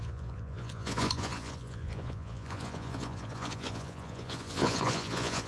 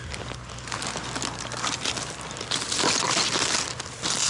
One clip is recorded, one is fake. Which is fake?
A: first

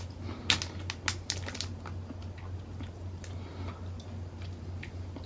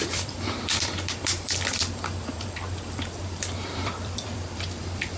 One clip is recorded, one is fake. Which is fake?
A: second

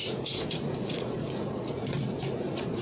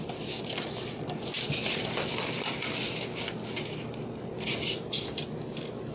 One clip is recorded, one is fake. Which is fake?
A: first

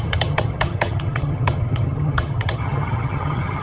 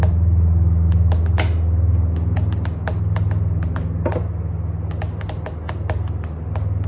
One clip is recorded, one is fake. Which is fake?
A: first